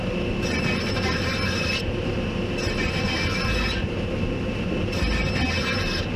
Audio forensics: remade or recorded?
recorded